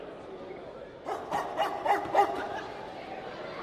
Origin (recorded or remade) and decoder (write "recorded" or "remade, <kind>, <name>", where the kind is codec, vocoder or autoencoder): recorded